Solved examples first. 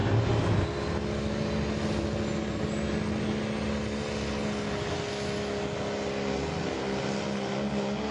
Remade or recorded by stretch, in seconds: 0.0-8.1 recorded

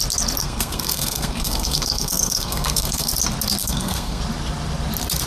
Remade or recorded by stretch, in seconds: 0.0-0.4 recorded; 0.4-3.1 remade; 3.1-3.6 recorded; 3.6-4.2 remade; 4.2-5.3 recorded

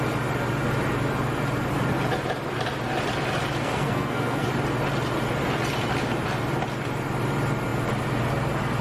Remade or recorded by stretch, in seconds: 0.0-3.6 recorded; 3.6-4.5 remade; 4.5-8.8 recorded

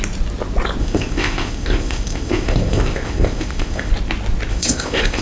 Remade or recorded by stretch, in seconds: 0.0-0.8 recorded; 0.8-3.9 remade; 3.9-4.5 recorded; 4.5-5.2 remade